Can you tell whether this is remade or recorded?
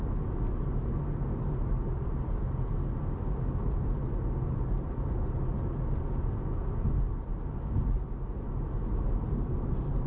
recorded